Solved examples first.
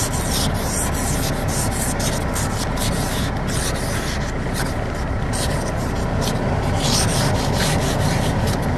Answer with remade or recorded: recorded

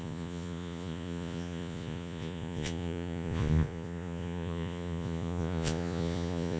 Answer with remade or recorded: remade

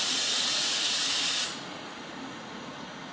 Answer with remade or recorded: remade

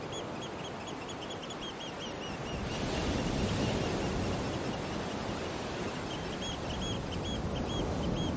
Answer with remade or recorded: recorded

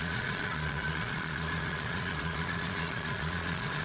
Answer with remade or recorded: remade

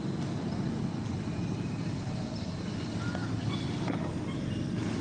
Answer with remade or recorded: recorded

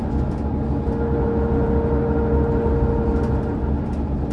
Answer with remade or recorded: recorded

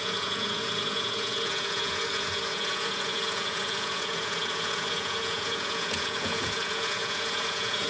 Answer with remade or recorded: remade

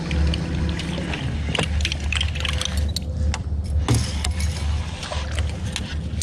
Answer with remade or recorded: recorded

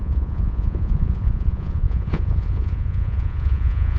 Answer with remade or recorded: remade